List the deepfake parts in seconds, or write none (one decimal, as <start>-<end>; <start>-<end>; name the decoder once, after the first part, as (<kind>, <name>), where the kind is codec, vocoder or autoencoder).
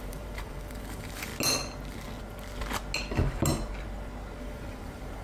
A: 0.0-1.3 (vocoder, BigVGAN v2); 4.4-5.2